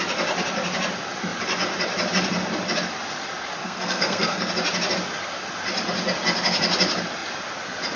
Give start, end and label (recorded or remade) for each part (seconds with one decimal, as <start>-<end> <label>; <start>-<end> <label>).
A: 0.0-3.6 recorded; 3.6-4.5 remade; 4.5-8.0 recorded